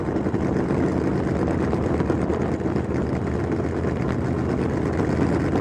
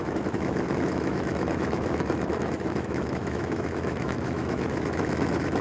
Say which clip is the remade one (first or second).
second